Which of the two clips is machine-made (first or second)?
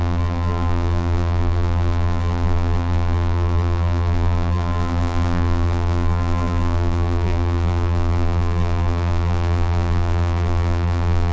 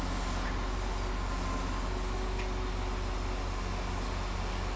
first